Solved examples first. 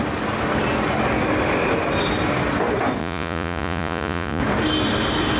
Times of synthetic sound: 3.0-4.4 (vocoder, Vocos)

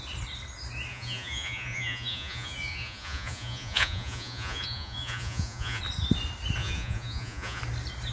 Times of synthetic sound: 0.9-5.8 (vocoder, Vocos); 6.6-7.6